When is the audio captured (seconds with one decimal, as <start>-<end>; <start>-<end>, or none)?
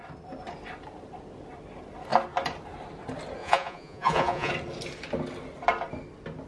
0.0-3.4; 4.5-6.5